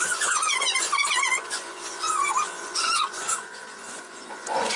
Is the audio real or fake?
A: fake